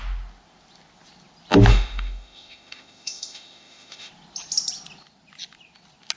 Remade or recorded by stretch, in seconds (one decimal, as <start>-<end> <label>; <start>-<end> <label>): 0.0-1.7 recorded; 1.7-4.1 remade; 4.1-6.2 recorded